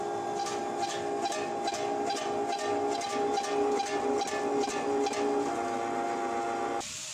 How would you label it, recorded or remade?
recorded